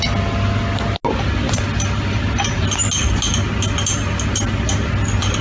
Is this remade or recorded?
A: recorded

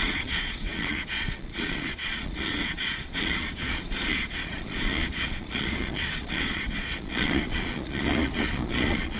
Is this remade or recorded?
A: remade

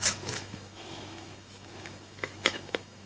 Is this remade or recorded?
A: remade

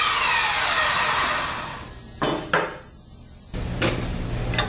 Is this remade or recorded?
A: recorded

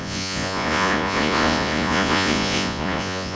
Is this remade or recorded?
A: remade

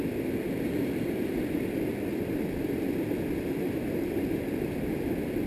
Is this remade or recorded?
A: recorded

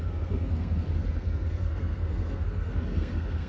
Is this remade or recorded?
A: remade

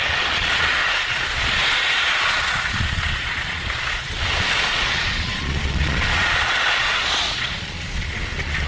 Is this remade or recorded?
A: remade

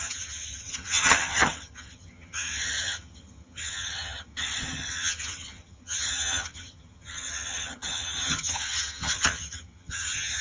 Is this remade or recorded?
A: remade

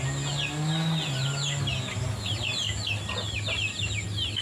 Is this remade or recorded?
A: recorded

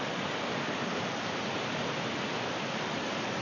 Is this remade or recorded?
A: recorded